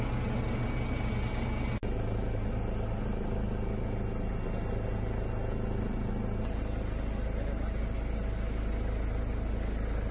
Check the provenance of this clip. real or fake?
real